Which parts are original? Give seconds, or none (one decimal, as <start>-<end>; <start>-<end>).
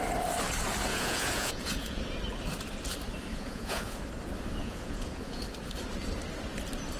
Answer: 0.0-0.9; 2.0-3.3; 4.0-4.6; 5.4-7.0